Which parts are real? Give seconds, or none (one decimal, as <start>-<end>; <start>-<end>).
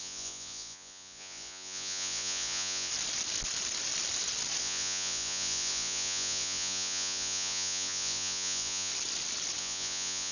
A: 2.9-4.6; 8.9-9.6